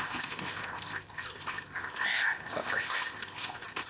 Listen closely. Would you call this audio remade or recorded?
remade